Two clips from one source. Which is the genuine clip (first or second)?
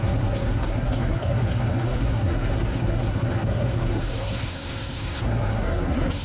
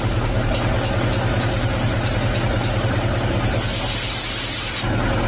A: second